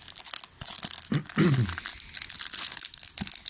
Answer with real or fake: real